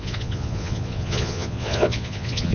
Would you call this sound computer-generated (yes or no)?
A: yes